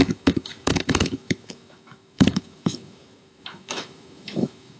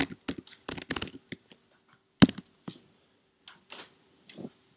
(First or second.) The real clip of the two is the second